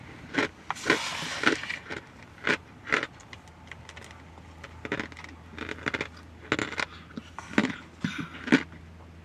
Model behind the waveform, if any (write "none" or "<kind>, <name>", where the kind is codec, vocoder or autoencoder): none